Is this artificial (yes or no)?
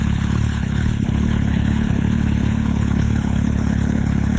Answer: yes